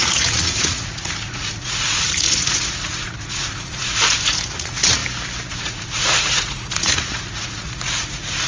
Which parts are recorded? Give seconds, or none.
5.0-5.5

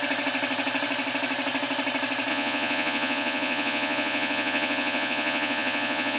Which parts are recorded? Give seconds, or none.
0.0-2.3

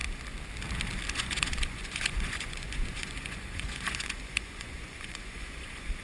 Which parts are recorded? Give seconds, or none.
0.0-1.1

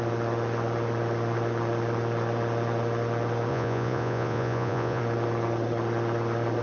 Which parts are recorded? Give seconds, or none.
0.0-3.5; 5.0-6.6

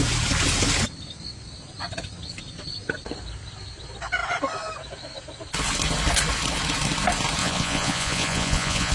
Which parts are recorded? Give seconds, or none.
0.0-7.4

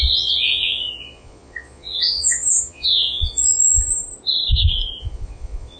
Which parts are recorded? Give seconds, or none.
3.9-5.0

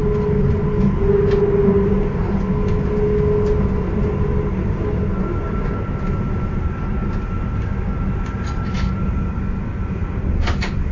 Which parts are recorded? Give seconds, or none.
0.0-10.9

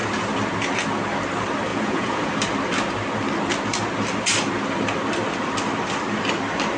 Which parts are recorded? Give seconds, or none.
0.0-1.7; 2.3-6.8